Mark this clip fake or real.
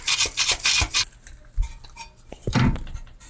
real